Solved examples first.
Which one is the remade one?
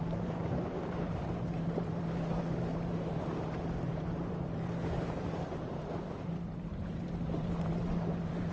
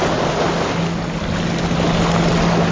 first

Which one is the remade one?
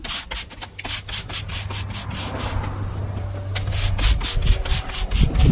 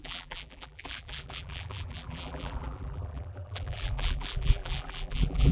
second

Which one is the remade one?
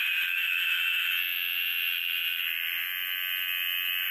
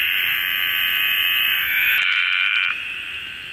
second